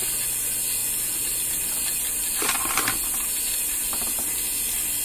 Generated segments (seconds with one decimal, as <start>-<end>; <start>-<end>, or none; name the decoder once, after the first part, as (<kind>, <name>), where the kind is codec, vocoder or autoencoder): none